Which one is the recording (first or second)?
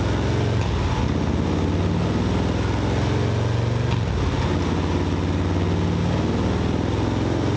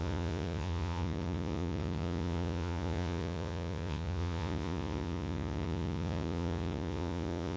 first